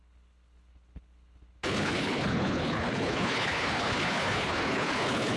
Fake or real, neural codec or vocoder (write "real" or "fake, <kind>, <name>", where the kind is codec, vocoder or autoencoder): fake, codec, HILCodec